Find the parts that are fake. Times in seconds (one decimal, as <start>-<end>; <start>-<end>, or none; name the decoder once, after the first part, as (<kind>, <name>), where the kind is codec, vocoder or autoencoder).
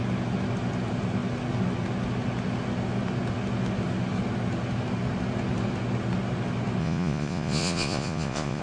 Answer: 6.8-8.6 (vocoder, Vocos)